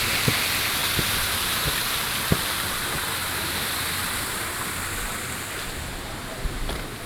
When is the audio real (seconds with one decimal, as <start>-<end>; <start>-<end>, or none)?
0.0-7.1